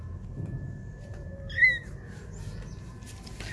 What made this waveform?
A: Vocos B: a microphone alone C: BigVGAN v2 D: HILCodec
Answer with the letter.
B